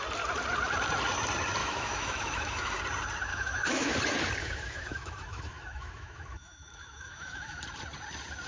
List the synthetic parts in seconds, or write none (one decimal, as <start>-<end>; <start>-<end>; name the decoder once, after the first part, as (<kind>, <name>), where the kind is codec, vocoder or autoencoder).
1.6-2.8 (autoencoder, DAC-VAE); 3.3-4.0; 4.4-7.6